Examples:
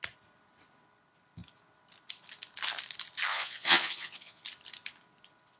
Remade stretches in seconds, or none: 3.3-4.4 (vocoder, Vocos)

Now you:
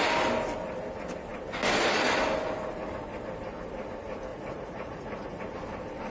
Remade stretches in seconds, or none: 4.3-5.4 (vocoder, Vocos)

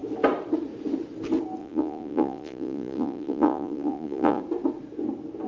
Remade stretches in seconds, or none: 1.6-4.4 (vocoder, Vocos)

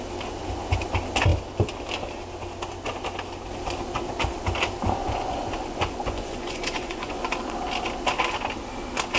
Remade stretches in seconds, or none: 5.0-7.2 (vocoder, Vocos)